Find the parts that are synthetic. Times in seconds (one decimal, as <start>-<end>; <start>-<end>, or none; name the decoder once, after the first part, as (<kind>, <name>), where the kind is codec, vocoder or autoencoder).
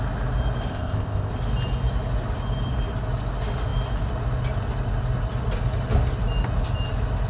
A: 0.7-1.3 (codec, ZipCodec)